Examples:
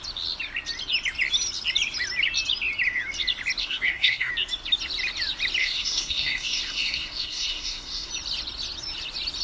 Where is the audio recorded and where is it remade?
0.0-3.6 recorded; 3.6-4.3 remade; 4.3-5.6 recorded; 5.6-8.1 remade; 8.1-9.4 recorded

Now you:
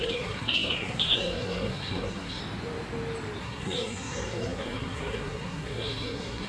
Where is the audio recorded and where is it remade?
0.0-2.4 remade; 2.4-3.4 recorded; 3.4-6.5 remade